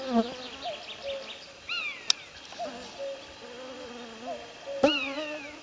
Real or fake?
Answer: real